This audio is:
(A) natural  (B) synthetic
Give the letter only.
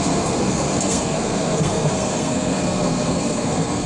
B